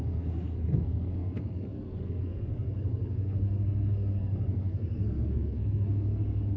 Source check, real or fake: fake